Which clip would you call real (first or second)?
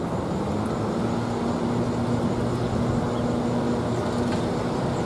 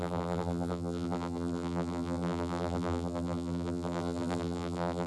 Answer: first